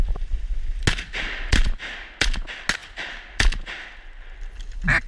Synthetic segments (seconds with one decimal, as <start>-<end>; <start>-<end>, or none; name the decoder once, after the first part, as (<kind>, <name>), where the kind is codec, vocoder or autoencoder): none